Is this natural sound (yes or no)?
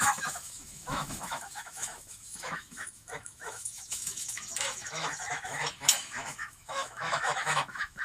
no